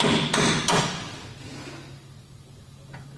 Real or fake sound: real